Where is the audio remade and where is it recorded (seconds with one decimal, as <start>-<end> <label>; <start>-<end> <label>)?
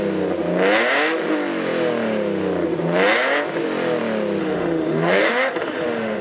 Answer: 0.0-4.4 recorded; 4.4-6.2 remade